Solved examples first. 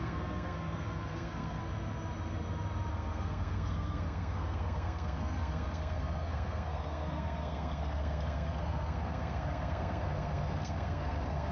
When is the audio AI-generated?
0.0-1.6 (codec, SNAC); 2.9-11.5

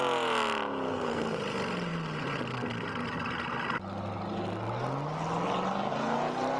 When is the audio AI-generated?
0.9-1.4 (codec, SNAC)

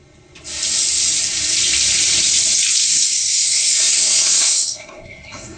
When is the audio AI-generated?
2.8-5.6 (codec, SNAC)

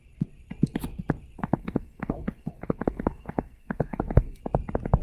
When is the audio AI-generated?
1.4-4.4 (codec, SNAC)

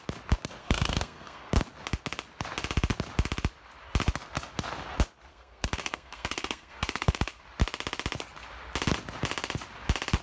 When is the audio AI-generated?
0.6-1.5 (codec, SNAC); 5.3-7.4

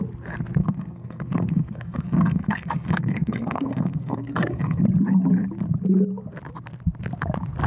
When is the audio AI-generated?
0.6-4.8 (codec, SNAC)

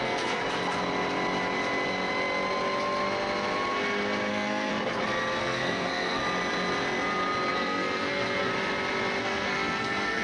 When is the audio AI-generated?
0.0-0.4 (codec, SNAC); 4.3-4.7; 5.4-6.2; 7.5-8.5; 9.2-10.2

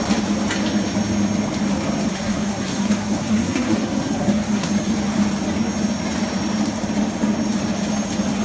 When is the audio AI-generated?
2.1-4.7 (codec, SNAC)